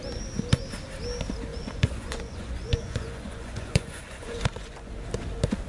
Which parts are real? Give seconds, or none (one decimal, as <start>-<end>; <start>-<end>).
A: 0.0-1.5; 4.9-5.7